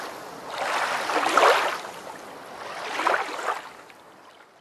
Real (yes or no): yes